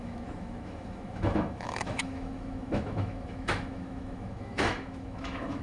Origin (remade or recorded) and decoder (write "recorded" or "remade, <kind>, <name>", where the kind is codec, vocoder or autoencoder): remade, autoencoder, DAC-VAE